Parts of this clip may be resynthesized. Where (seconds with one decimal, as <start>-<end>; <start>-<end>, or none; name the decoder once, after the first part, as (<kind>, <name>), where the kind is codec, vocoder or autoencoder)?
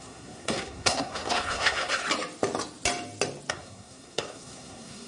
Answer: 0.0-2.0 (codec, SNAC); 3.5-5.1